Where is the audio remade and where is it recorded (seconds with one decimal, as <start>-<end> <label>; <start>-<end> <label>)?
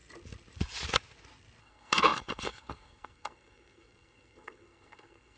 0.0-1.6 recorded; 1.6-5.4 remade